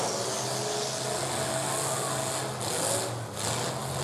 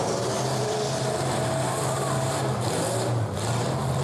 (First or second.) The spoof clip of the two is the second